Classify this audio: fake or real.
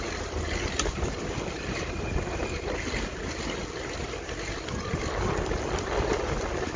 real